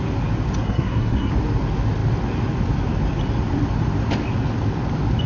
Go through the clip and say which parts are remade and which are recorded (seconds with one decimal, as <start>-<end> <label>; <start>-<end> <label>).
0.0-0.6 recorded; 0.6-1.3 remade; 1.3-5.3 recorded

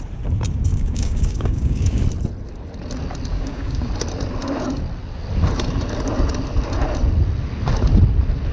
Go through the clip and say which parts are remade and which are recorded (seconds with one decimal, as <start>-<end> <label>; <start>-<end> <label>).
0.0-0.7 recorded; 0.7-2.0 remade; 2.0-3.3 recorded; 3.3-3.9 remade; 3.9-8.5 recorded

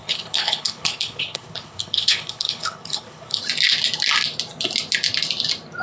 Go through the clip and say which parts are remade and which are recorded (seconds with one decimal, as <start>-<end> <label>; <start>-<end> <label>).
0.0-3.4 remade; 3.4-5.8 recorded

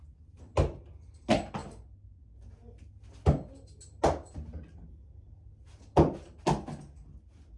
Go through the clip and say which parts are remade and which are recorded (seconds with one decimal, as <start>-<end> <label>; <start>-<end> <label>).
0.0-1.6 recorded; 1.6-2.2 remade; 2.2-7.6 recorded

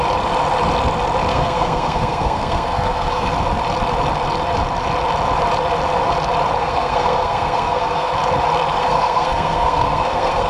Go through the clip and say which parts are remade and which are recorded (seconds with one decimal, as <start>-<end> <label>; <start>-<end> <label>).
0.0-1.3 recorded; 1.3-3.3 remade; 3.3-6.6 recorded; 6.6-8.1 remade; 8.1-8.8 recorded; 8.8-10.5 remade

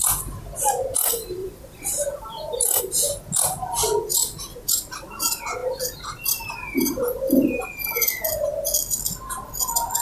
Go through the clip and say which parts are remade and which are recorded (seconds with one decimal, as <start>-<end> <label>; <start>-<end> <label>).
0.0-1.4 recorded; 1.4-2.8 remade; 2.8-10.0 recorded